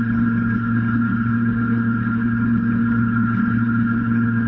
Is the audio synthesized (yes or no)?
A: yes